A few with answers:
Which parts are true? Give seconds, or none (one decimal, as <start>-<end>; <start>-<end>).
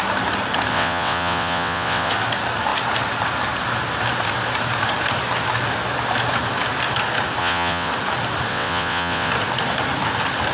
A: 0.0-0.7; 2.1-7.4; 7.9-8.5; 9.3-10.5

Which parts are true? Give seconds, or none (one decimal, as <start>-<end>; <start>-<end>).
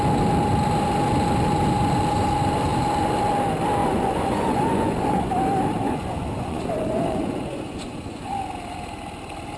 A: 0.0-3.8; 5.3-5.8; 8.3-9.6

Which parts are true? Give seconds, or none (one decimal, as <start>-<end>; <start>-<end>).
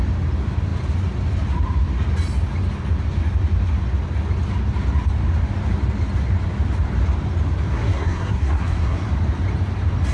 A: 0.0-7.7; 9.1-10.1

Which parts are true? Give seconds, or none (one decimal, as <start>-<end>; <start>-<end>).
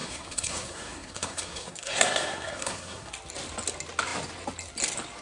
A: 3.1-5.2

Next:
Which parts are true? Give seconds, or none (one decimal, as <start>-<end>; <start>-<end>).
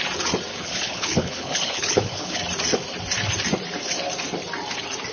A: 0.0-0.5; 2.4-5.1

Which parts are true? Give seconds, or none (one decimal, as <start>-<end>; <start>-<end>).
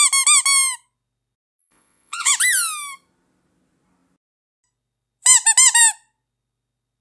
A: 0.0-1.6; 2.3-7.0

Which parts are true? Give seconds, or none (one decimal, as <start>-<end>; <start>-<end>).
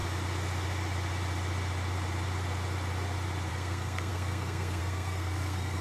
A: 0.0-3.5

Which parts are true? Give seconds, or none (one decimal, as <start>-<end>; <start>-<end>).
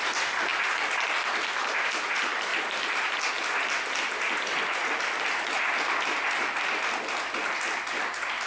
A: 0.0-8.5